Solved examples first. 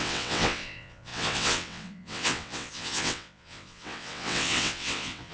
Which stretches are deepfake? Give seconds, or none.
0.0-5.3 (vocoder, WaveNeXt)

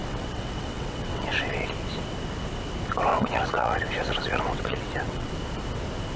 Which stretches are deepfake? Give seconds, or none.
0.0-1.7 (vocoder, WaveNeXt); 3.1-5.3